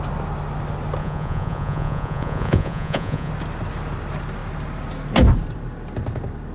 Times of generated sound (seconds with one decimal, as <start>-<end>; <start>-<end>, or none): 1.0-3.3